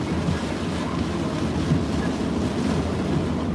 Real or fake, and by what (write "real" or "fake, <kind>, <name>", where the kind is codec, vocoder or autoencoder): real